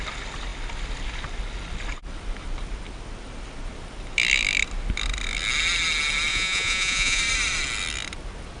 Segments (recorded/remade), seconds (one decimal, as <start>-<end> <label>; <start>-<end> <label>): 0.0-6.3 recorded; 6.3-7.2 remade; 7.2-8.6 recorded